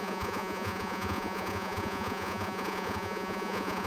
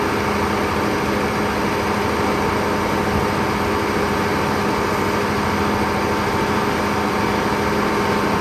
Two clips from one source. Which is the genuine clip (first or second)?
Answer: second